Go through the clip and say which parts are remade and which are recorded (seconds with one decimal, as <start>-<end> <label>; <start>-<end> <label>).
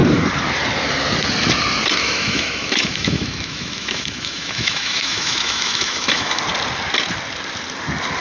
0.0-2.0 recorded; 2.0-6.4 remade; 6.4-8.2 recorded